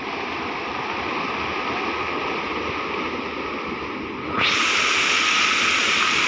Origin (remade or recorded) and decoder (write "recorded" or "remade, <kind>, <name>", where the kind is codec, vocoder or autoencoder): recorded